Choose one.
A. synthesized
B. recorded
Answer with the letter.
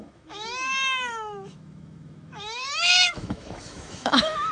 A